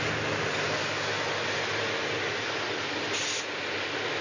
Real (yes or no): yes